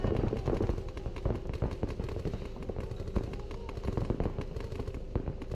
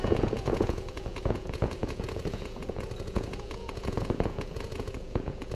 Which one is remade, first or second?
second